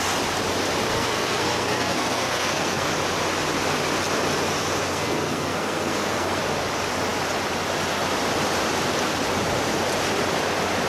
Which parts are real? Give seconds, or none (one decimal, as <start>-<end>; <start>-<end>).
0.0-0.9; 2.9-4.8; 6.4-10.9